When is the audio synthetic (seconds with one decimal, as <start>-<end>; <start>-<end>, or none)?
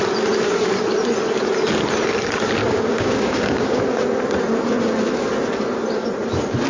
2.6-3.8